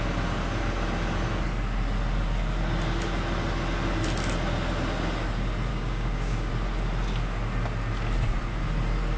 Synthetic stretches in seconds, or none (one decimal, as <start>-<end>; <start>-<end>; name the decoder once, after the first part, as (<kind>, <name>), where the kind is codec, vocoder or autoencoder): 5.7-6.5 (codec, DAC)